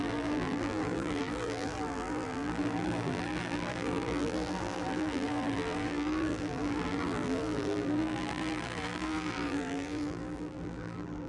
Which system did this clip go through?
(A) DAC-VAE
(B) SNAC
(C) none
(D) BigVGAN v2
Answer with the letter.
D